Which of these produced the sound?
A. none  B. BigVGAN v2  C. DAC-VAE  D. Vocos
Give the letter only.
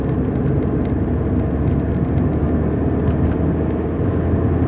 A